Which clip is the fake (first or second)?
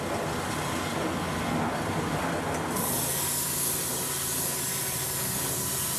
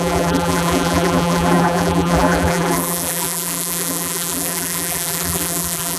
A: second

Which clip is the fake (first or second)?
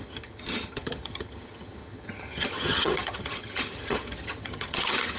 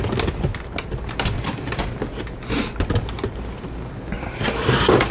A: first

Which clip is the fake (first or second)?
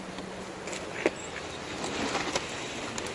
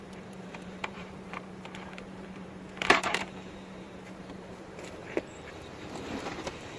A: second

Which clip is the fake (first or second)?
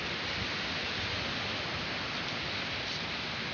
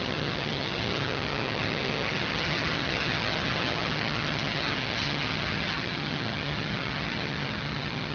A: second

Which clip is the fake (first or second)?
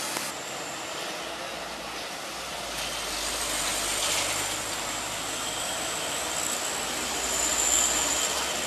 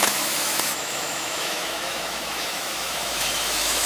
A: second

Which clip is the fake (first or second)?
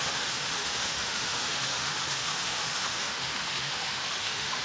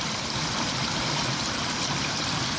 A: first